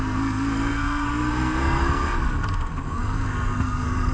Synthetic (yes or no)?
yes